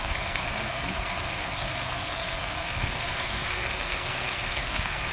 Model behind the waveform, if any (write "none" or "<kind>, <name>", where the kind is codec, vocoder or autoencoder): codec, SNAC